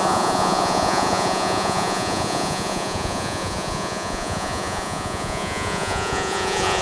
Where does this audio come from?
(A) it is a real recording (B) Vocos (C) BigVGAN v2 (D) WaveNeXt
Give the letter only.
B